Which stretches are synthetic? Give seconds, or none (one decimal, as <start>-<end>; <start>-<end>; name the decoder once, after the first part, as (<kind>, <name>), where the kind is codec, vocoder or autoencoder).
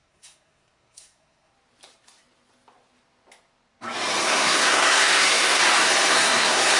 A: 0.0-1.5 (codec, SNAC); 4.2-5.6; 6.1-6.8